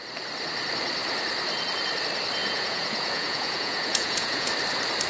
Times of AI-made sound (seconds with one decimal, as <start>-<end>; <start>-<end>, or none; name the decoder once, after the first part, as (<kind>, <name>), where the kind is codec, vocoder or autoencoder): 2.4-4.5 (vocoder, Vocos)